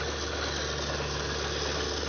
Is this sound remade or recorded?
recorded